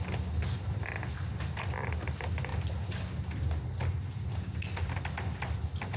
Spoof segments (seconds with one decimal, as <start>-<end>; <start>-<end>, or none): none